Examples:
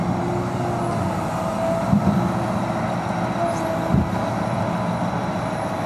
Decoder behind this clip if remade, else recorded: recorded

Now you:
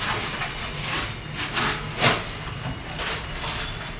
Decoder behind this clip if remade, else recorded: recorded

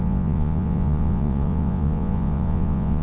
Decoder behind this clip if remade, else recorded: remade, vocoder, Vocos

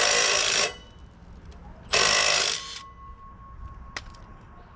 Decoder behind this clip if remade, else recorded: recorded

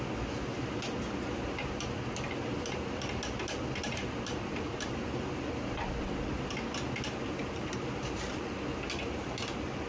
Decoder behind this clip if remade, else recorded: recorded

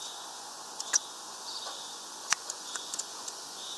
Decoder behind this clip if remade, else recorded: remade, vocoder, Vocos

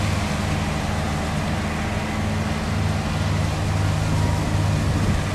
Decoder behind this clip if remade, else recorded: recorded